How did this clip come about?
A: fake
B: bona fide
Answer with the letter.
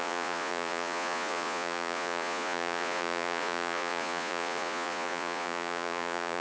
A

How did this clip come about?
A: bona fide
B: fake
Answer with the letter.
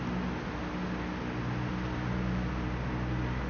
A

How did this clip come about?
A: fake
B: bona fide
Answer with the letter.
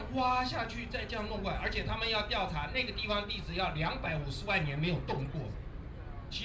B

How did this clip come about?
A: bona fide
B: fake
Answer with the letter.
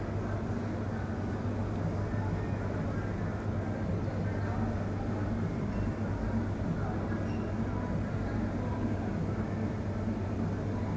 A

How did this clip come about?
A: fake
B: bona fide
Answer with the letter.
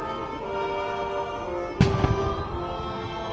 B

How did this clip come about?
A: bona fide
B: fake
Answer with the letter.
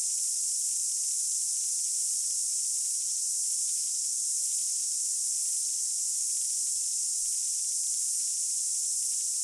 A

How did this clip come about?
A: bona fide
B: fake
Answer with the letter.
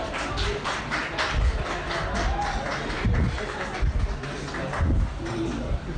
A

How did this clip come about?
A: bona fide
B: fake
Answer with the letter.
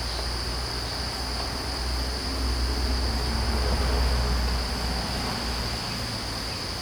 A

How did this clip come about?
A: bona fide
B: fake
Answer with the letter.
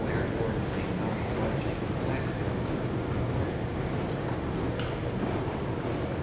A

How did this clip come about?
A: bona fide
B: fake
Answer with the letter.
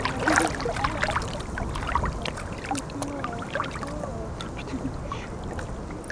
A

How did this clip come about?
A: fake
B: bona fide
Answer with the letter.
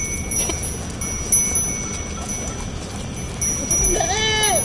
B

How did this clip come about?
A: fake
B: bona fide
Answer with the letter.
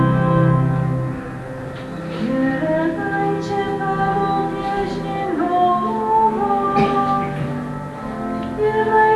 B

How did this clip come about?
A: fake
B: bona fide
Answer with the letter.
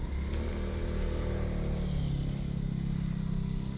B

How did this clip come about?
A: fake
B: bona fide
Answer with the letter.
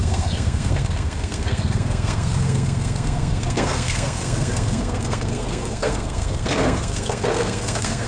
A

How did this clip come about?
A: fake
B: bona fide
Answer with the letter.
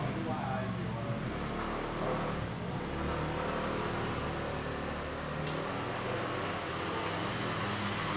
B